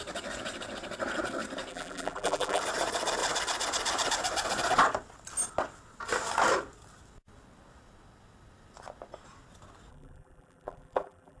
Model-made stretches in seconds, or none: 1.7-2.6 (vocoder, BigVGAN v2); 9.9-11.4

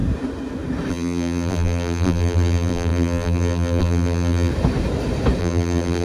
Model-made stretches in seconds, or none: 0.9-4.5 (vocoder, BigVGAN v2); 5.4-6.0

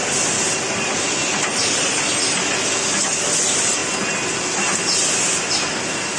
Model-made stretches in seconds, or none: none

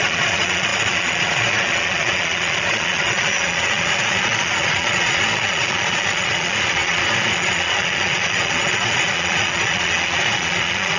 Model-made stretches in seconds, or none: 0.0-11.0 (vocoder, Vocos)